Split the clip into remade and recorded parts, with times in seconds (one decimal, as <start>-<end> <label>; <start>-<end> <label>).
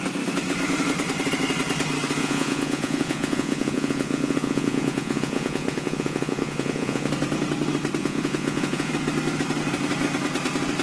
0.0-2.2 recorded; 2.2-7.1 remade; 7.1-8.0 recorded; 8.0-8.9 remade; 8.9-10.8 recorded